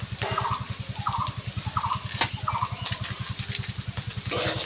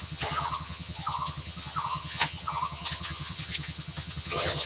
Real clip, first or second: first